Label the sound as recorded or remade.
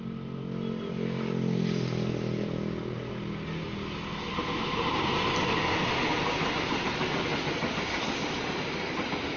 recorded